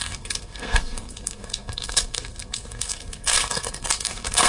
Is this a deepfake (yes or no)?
yes